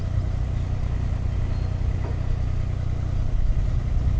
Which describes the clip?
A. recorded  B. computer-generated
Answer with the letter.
A